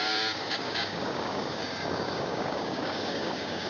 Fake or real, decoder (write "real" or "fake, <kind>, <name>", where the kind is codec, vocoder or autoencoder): fake, codec, DAC